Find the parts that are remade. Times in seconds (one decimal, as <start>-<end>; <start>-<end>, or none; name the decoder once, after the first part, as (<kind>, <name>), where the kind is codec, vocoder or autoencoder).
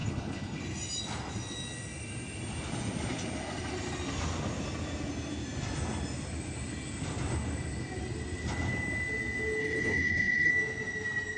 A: 0.0-0.6 (codec, HILCodec); 9.6-10.5